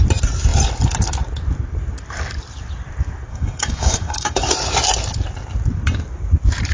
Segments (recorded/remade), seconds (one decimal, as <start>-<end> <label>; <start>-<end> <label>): 0.0-3.3 recorded; 3.3-4.5 remade; 4.5-6.7 recorded